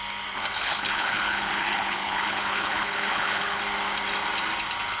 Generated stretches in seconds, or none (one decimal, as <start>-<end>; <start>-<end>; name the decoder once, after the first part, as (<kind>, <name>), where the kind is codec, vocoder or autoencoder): 0.6-3.6 (codec, HILCodec)